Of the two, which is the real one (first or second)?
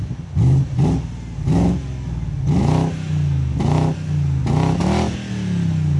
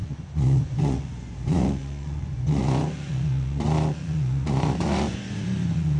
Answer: first